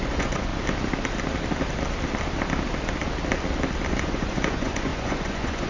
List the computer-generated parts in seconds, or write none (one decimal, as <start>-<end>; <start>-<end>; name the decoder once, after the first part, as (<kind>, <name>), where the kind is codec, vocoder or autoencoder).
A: 0.0-0.5 (vocoder, Vocos); 3.9-5.7